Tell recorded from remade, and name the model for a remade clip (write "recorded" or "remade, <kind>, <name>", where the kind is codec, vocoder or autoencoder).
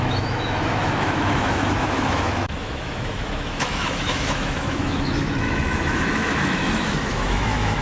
remade, autoencoder, DAC-VAE